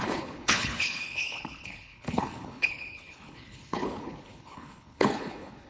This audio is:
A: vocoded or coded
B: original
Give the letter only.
A